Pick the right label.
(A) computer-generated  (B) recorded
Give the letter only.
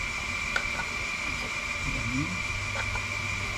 B